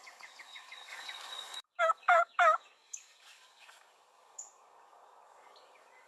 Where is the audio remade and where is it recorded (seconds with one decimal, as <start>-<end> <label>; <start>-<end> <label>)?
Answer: 0.0-6.1 remade